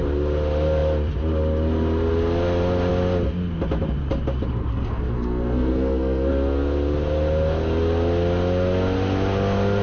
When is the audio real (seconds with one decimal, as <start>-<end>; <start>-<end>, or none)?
0.0-4.7; 6.3-9.8

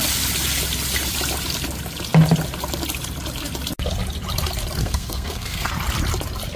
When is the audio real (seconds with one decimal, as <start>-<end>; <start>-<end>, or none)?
0.0-4.8; 5.7-6.6

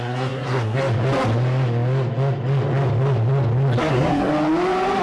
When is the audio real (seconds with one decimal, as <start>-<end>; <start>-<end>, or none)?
0.8-3.8; 4.3-5.0